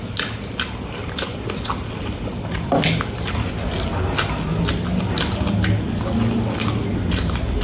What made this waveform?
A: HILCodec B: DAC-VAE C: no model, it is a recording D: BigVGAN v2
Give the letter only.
C